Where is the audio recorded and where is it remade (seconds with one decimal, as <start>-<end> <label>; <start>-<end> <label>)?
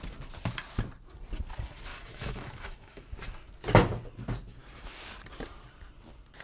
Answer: 0.0-1.9 recorded; 1.9-3.1 remade; 3.1-6.4 recorded